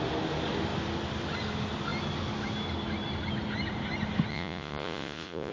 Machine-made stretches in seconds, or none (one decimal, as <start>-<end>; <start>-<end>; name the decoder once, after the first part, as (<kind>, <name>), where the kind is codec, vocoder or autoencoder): 4.3-5.5 (vocoder, Vocos)